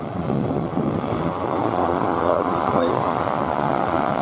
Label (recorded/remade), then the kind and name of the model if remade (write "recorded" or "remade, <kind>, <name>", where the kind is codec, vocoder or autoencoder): remade, vocoder, Vocos